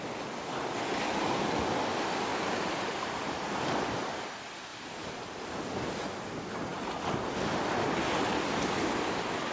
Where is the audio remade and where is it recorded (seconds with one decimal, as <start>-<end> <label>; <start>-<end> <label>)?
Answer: 0.0-2.3 recorded; 2.3-4.3 remade; 4.3-9.5 recorded